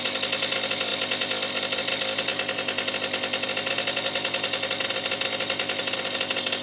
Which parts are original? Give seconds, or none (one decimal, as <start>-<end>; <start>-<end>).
0.0-6.6